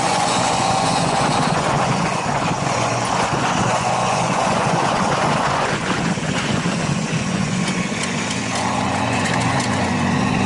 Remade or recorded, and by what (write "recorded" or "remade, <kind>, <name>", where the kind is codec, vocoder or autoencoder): remade, vocoder, Vocos